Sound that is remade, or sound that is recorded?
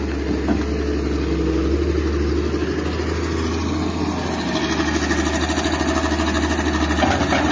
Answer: recorded